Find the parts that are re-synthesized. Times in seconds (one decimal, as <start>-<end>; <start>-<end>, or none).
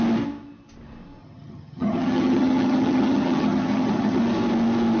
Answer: 1.2-4.2